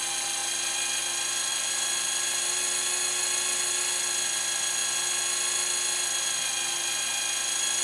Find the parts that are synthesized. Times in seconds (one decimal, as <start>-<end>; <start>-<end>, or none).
0.4-1.0; 1.5-3.8